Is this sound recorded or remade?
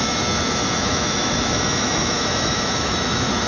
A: remade